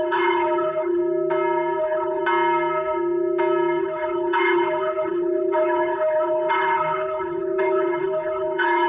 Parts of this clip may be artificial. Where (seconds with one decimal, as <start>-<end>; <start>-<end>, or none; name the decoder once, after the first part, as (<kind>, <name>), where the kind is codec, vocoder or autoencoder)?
0.0-1.0 (codec, HILCodec); 1.8-2.2; 3.8-8.9